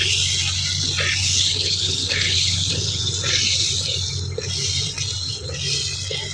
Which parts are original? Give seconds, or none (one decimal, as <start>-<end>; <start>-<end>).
0.0-1.2; 3.0-6.3